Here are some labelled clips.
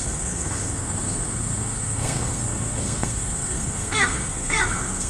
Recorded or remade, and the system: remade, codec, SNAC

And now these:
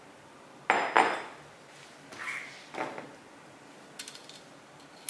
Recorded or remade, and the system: recorded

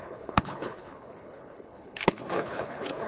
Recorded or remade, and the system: remade, codec, HILCodec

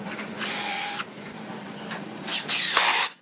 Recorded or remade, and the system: remade, vocoder, Vocos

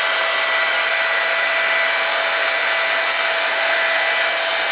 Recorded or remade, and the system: recorded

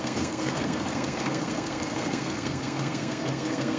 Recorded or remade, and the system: remade, codec, SNAC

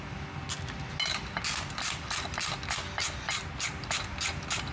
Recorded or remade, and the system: recorded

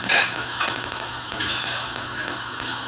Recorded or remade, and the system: remade, autoencoder, DAC-VAE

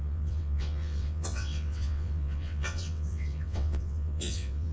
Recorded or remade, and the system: remade, vocoder, WaveNeXt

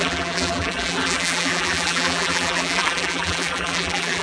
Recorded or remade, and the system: remade, vocoder, BigVGAN v2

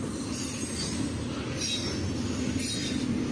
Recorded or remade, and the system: recorded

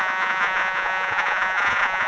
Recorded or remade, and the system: remade, vocoder, Vocos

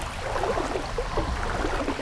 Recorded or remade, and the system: recorded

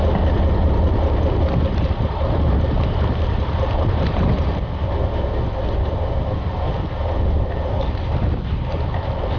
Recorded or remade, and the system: recorded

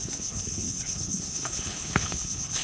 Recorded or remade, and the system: remade, codec, HILCodec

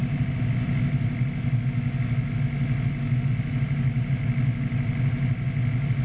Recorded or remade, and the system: recorded